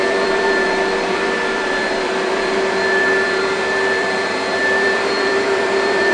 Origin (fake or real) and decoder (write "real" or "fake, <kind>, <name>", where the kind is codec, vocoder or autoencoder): fake, vocoder, BigVGAN v2